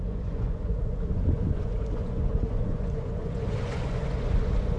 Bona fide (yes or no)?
no